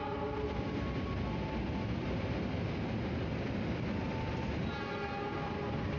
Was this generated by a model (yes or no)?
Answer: no